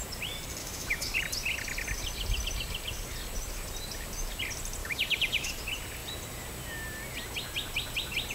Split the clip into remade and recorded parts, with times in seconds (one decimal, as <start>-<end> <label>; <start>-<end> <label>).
0.0-0.6 recorded; 0.6-1.2 remade; 1.2-4.8 recorded; 4.8-5.6 remade; 5.6-8.3 recorded